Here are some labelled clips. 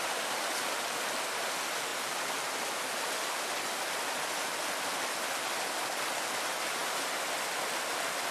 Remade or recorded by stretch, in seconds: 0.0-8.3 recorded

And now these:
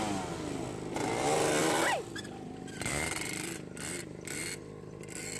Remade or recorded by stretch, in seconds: 0.0-1.6 recorded; 1.6-4.4 remade; 4.4-5.4 recorded

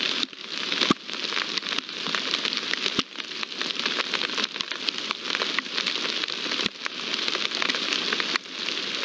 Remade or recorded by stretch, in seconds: 0.0-0.4 recorded; 0.4-0.9 remade; 0.9-9.0 recorded

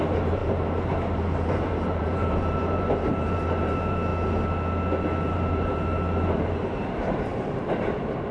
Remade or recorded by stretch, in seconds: 0.0-4.1 remade; 4.1-5.3 recorded; 5.3-8.3 remade